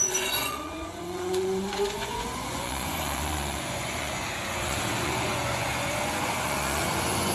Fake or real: fake